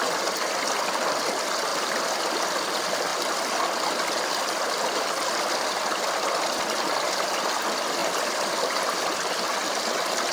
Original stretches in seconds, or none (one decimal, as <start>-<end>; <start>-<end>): 0.0-1.7; 2.4-10.3